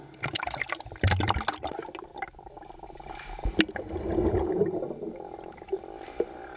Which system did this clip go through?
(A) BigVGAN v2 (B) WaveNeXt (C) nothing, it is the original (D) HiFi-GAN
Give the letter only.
C